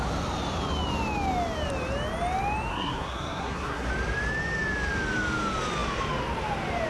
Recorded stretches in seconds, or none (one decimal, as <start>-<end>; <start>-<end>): 0.0-2.7; 3.9-6.9